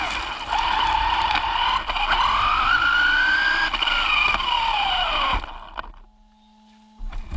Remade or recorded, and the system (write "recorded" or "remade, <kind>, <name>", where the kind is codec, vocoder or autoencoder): recorded